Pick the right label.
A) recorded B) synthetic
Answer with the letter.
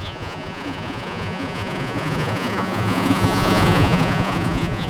B